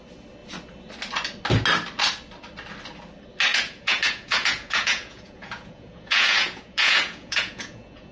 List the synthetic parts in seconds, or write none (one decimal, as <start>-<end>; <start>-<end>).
3.5-8.1